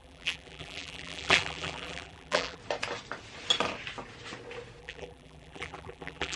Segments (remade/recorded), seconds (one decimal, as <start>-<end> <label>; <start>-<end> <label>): 0.0-2.6 remade; 2.6-4.8 recorded; 4.8-6.4 remade